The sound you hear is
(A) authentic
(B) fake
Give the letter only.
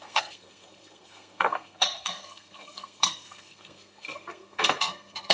B